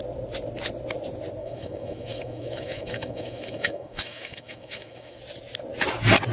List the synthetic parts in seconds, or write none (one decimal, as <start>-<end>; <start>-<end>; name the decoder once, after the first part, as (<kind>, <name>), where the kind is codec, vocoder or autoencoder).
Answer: 1.4-5.2 (autoencoder, DAC-VAE)

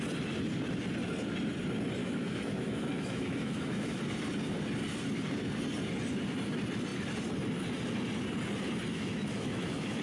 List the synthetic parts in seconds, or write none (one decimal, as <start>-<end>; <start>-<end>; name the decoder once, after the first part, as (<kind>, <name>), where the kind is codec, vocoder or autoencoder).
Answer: 2.0-4.0 (autoencoder, DAC-VAE); 8.9-10.0

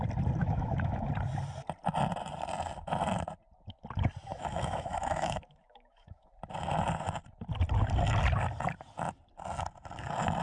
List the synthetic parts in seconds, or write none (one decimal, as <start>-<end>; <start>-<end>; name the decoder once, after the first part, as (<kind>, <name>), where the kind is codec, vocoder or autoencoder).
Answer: 0.4-1.1 (autoencoder, DAC-VAE); 4.3-6.3

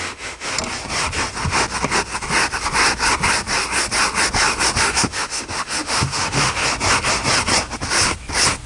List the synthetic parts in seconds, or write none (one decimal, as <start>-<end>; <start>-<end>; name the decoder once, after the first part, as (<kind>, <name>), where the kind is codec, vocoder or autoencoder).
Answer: 0.0-0.5 (autoencoder, DAC-VAE); 4.8-6.6

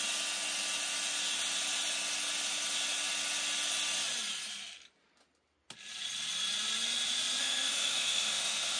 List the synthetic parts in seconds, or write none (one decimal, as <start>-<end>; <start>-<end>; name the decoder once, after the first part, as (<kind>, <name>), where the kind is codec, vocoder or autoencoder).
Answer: 7.4-8.8 (autoencoder, DAC-VAE)

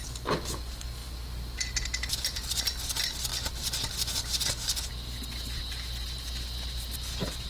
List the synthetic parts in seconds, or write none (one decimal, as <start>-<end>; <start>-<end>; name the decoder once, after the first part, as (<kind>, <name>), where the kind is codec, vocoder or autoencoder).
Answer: none